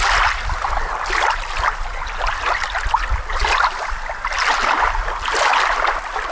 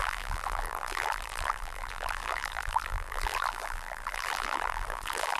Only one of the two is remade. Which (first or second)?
second